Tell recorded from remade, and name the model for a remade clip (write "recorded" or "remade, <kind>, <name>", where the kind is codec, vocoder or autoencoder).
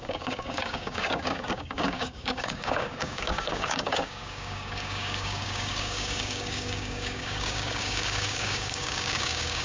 remade, codec, DAC